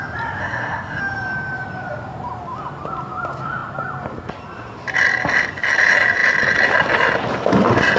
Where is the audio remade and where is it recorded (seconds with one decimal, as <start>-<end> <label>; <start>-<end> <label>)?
0.0-0.4 recorded; 0.4-1.0 remade; 1.0-8.0 recorded